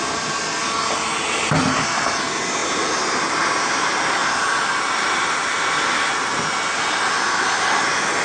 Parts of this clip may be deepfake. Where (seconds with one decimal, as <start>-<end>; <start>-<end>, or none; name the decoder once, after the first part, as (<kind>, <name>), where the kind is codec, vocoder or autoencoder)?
none